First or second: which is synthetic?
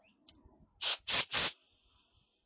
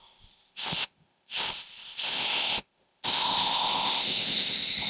second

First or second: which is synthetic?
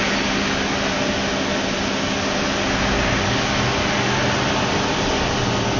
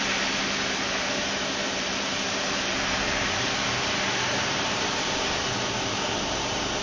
second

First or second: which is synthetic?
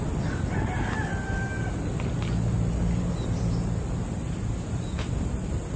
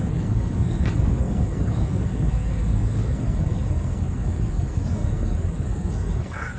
second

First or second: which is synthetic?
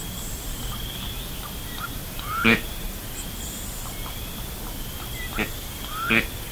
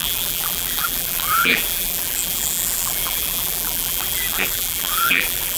second